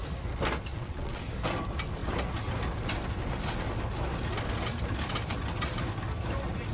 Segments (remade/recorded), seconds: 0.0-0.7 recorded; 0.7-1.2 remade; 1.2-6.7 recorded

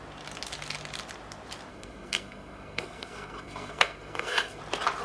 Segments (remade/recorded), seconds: 0.0-1.7 recorded; 1.7-4.6 remade; 4.6-5.0 recorded

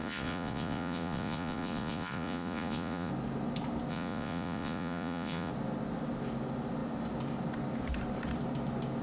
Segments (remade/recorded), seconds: 0.0-3.1 remade; 3.1-3.9 recorded; 3.9-5.5 remade; 5.5-9.0 recorded

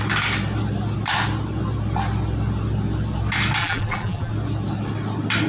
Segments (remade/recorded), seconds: 0.0-3.6 recorded; 3.6-4.3 remade; 4.3-5.5 recorded

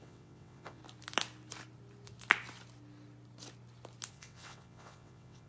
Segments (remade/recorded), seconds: 0.0-0.8 remade; 0.8-4.1 recorded; 4.1-5.5 remade

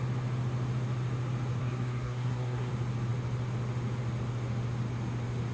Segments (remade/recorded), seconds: 0.0-1.6 recorded; 1.6-2.7 remade; 2.7-5.5 recorded

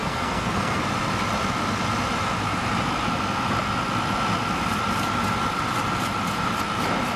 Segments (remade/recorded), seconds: 0.0-0.8 remade; 0.8-7.2 recorded